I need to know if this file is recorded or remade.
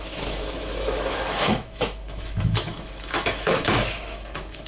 remade